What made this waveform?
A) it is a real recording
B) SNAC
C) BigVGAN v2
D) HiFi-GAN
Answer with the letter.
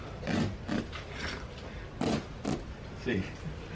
C